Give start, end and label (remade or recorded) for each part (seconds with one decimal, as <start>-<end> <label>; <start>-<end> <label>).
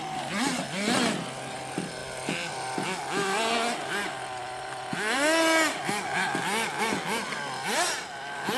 0.0-8.6 recorded